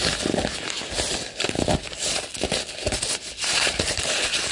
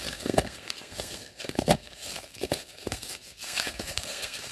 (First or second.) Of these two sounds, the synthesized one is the second